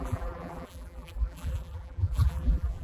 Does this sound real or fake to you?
fake